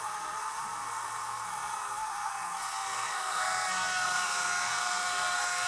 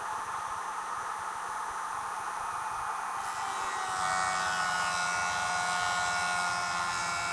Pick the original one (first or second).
second